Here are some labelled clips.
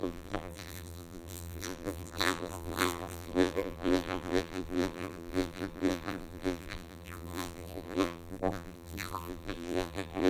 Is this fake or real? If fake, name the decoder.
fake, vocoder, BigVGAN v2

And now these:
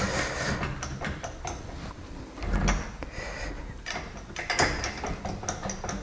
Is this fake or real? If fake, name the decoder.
real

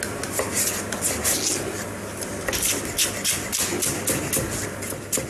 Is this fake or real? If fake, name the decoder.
real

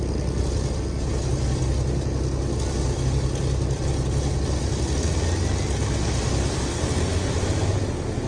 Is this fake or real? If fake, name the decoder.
real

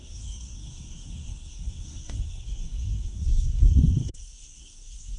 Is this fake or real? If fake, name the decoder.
fake, codec, SNAC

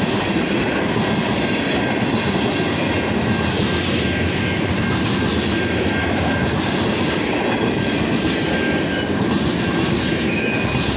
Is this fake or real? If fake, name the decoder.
real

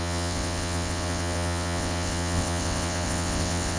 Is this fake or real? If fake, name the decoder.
fake, vocoder, WaveNeXt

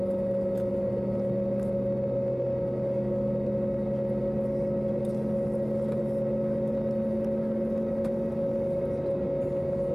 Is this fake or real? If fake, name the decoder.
real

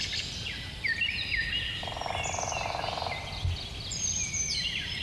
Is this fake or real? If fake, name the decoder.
real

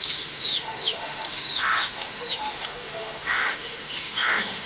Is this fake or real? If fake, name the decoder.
fake, autoencoder, DAC-VAE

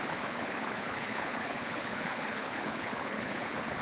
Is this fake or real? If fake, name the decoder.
fake, codec, HILCodec